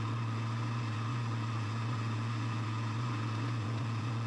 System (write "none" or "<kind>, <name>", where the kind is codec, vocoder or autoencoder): vocoder, Vocos